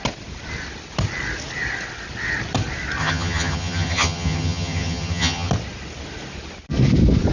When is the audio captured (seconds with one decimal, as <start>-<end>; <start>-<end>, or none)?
0.0-3.0; 5.5-7.3

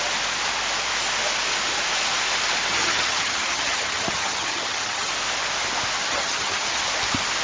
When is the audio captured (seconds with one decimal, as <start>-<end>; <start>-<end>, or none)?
0.0-2.7; 5.1-6.0; 6.8-7.4